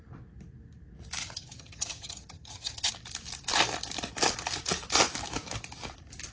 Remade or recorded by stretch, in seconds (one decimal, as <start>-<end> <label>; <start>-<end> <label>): 0.0-1.2 recorded; 1.2-2.9 remade; 2.9-6.3 recorded